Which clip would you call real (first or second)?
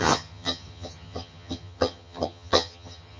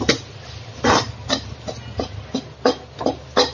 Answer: second